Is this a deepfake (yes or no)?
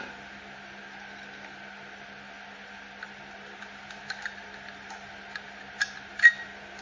no